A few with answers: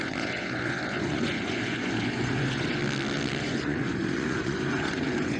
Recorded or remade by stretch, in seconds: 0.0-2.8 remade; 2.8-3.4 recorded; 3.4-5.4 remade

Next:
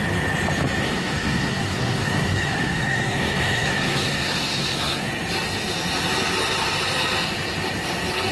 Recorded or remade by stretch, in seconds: 0.0-0.8 recorded; 0.8-5.1 remade; 5.1-8.3 recorded

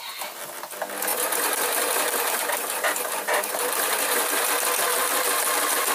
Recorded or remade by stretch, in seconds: 0.0-1.1 recorded; 1.1-4.5 remade; 4.5-4.9 recorded; 4.9-5.9 remade

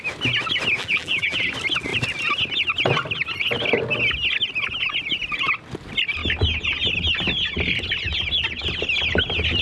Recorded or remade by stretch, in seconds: 0.0-0.8 recorded; 0.8-1.5 remade; 1.5-9.6 recorded

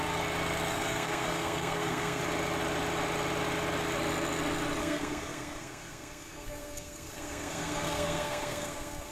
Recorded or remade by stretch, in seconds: 0.0-0.7 recorded; 0.7-2.2 remade; 2.2-4.8 recorded; 4.8-9.1 remade

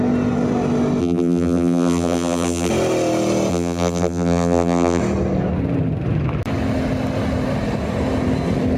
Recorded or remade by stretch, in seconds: 0.0-1.0 recorded; 1.0-2.7 remade; 2.7-3.5 recorded; 3.5-5.0 remade; 5.0-8.8 recorded

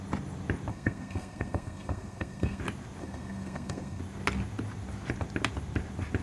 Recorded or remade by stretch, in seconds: 0.0-0.7 recorded; 0.7-2.6 remade; 2.6-3.0 recorded; 3.0-4.0 remade; 4.0-6.2 recorded

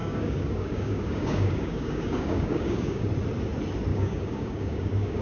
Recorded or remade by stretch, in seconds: 0.0-3.1 remade; 3.1-3.9 recorded; 3.9-5.2 remade